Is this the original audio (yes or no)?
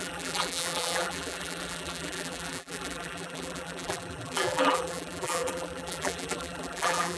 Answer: no